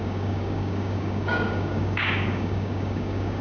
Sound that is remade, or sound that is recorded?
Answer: remade